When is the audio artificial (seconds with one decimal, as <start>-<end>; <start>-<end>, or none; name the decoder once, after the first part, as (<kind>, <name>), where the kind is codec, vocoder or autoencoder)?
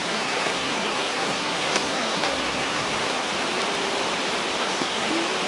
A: 0.0-3.3 (codec, SNAC); 4.6-5.1